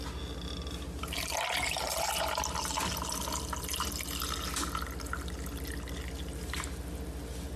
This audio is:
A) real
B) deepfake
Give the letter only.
A